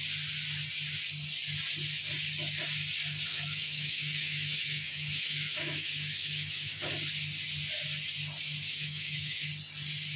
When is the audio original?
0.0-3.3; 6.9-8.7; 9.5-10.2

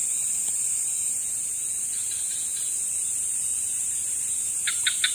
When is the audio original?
0.0-5.1

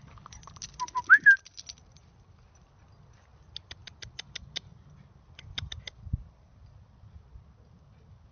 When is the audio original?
0.0-8.3

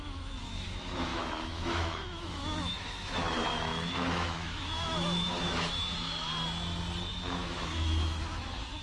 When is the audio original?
6.3-7.1